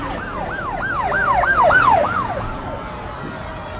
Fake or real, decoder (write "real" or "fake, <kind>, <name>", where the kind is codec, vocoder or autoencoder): real